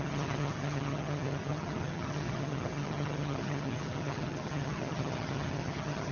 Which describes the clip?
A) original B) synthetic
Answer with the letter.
B